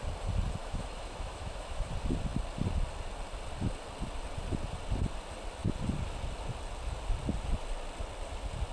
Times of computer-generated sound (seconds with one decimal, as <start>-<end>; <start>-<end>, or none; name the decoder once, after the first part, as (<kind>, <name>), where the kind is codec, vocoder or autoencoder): 0.6-1.9 (autoencoder, DAC-VAE)